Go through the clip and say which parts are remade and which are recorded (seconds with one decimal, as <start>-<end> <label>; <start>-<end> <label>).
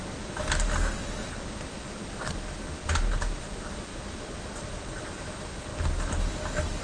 0.0-1.0 remade; 1.0-1.5 recorded; 1.5-2.8 remade; 2.8-3.4 recorded; 3.4-3.9 remade; 3.9-4.7 recorded; 4.7-6.8 remade